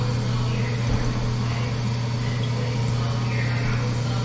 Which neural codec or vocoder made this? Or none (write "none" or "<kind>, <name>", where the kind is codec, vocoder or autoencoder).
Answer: none